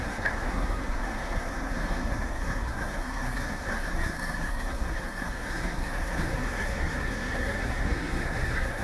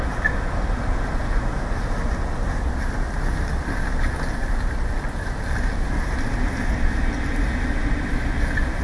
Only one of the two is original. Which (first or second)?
second